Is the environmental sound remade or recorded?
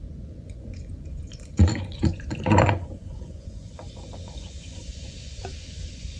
remade